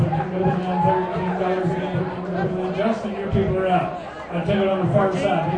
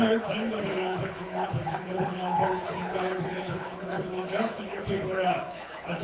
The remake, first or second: second